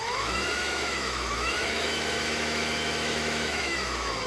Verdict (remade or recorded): remade